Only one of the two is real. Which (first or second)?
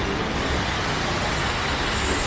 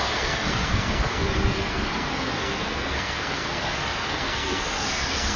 first